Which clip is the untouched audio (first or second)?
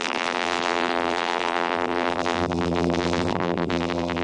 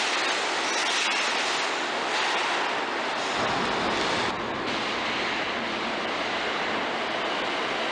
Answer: second